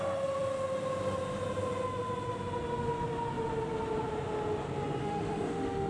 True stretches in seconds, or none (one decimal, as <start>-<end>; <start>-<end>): 0.0-5.0